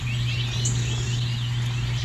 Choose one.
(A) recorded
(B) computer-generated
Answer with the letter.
A